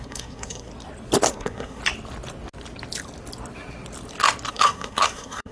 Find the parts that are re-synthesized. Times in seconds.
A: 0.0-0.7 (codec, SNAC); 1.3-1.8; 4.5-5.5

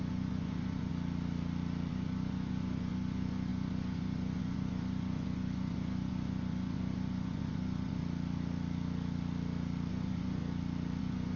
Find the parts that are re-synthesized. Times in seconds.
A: 0.0-0.9 (vocoder, Vocos); 1.9-8.0; 9.9-10.4; 11.0-11.4

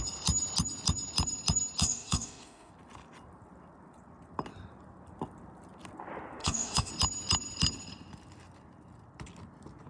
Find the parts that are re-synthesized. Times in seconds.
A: 1.8-2.7 (autoencoder, DAC-VAE); 6.4-6.9

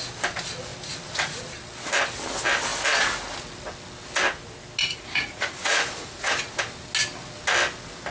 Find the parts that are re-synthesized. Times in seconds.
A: 4.8-6.5 (vocoder, Vocos)